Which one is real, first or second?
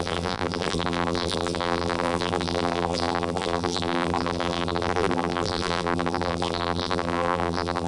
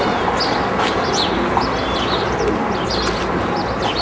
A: second